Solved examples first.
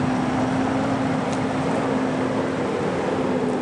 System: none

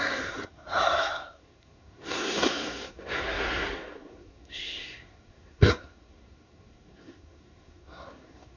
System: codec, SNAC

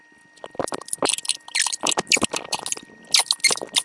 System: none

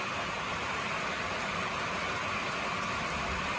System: none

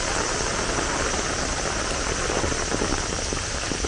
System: none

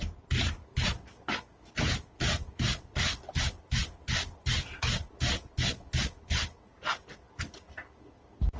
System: none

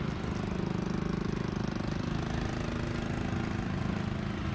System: none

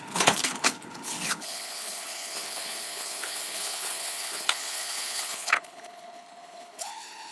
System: codec, HILCodec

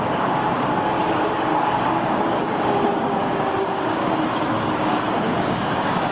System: codec, DAC